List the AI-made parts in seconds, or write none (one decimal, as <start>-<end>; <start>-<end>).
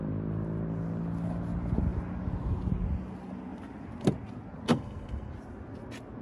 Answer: 4.7-5.3